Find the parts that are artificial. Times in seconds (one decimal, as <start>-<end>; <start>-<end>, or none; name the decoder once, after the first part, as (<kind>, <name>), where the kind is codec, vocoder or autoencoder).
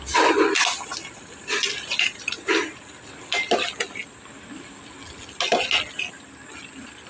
none